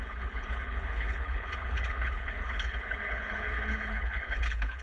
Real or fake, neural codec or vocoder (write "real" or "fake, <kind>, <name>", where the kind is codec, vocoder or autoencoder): fake, codec, HILCodec